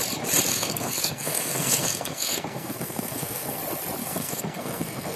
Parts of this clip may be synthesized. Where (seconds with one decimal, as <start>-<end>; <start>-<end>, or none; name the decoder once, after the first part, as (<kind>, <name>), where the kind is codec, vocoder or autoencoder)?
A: 0.5-3.6 (codec, SNAC); 4.0-5.2